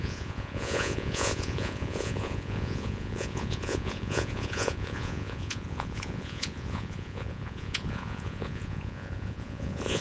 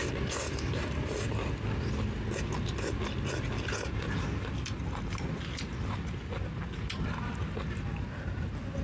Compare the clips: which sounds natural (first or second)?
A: second